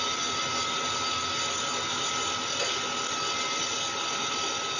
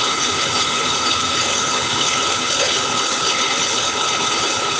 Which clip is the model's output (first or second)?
second